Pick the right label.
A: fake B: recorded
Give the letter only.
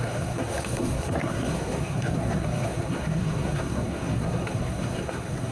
A